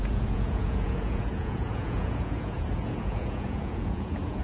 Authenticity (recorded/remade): remade